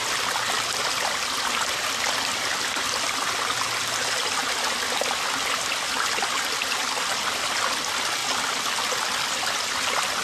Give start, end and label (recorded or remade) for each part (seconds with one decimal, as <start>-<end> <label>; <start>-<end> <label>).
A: 0.0-10.2 recorded